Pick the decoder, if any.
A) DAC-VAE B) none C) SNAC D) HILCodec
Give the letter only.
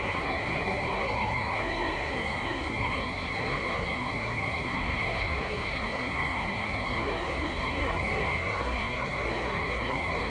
C